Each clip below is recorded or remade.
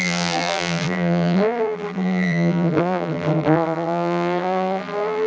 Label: remade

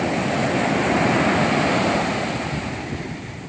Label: recorded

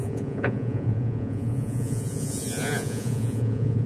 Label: remade